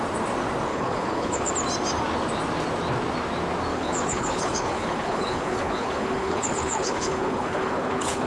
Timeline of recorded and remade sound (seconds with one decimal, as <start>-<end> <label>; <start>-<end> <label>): 0.0-0.7 recorded; 0.7-1.5 remade; 1.5-3.7 recorded; 3.7-8.3 remade